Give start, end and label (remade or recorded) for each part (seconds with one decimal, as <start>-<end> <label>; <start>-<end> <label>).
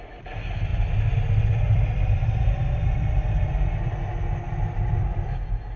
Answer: 0.0-5.8 recorded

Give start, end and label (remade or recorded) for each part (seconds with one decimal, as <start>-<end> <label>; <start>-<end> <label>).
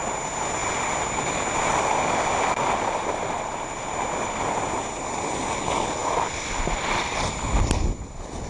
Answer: 0.0-8.5 recorded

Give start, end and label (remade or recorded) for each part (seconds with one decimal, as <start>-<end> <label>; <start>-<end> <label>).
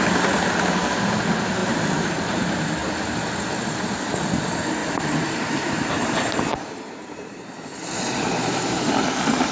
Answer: 0.0-1.6 recorded; 1.6-2.1 remade; 2.1-4.8 recorded; 4.8-9.0 remade; 9.0-9.5 recorded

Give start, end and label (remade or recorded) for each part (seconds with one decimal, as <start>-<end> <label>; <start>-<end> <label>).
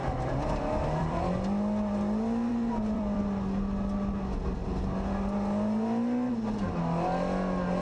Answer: 0.0-1.2 remade; 1.2-2.5 recorded; 2.5-3.2 remade; 3.2-7.8 recorded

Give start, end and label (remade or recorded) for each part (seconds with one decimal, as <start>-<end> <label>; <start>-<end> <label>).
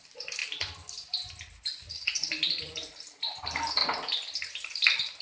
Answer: 0.0-0.4 remade; 0.4-1.9 recorded; 1.9-3.8 remade; 3.8-4.5 recorded; 4.5-5.2 remade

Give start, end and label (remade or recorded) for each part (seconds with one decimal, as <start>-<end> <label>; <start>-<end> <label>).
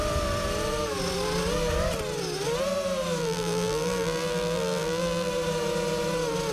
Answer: 0.0-3.2 recorded; 3.2-5.3 remade; 5.3-6.5 recorded